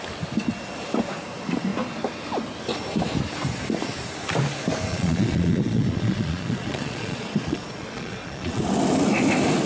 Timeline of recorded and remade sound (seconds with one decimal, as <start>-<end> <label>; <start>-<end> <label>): 0.0-4.9 recorded; 4.9-8.6 remade; 8.6-9.7 recorded